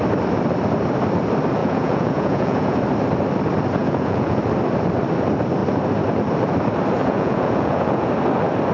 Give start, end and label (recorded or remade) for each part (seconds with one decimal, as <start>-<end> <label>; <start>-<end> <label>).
0.0-1.6 recorded; 1.6-2.8 remade; 2.8-3.8 recorded; 3.8-4.4 remade; 4.4-7.0 recorded; 7.0-8.1 remade; 8.1-8.7 recorded